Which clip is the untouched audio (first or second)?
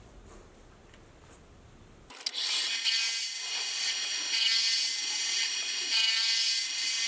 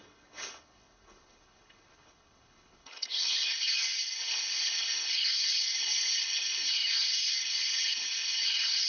first